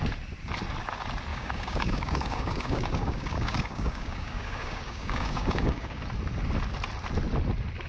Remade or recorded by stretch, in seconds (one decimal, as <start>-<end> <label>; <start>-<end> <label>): 0.0-1.3 recorded; 1.3-6.0 remade; 6.0-7.9 recorded